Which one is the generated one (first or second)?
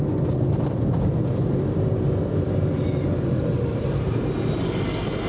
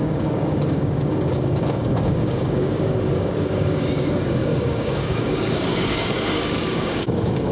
second